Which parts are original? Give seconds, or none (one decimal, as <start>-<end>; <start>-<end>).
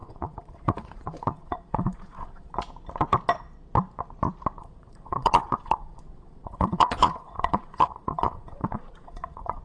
2.5-4.6